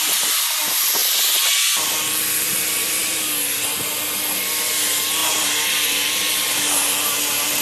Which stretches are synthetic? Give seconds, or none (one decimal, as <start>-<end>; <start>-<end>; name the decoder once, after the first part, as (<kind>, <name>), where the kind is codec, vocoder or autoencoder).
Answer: 3.0-3.6 (vocoder, BigVGAN v2)